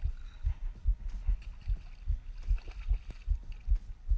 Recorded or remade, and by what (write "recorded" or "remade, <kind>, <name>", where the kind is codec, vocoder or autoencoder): recorded